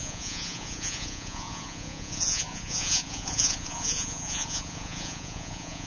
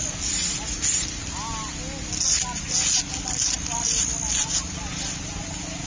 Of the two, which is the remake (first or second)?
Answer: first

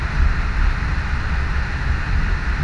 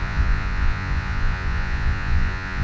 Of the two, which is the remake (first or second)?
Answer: second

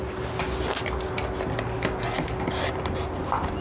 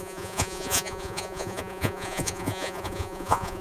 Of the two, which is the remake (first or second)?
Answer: second